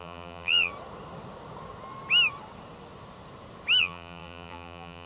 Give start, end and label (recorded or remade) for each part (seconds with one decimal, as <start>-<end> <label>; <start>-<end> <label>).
0.0-0.7 remade; 0.7-3.8 recorded; 3.8-5.1 remade